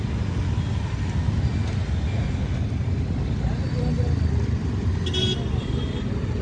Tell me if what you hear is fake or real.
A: real